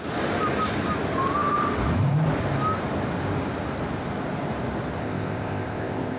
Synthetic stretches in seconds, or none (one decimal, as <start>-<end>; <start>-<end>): 5.0-6.2